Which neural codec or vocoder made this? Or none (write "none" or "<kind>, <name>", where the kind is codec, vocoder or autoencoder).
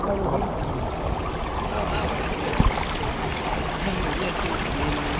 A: none